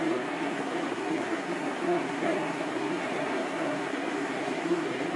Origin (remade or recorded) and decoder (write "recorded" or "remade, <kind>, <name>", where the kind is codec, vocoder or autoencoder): remade, codec, SNAC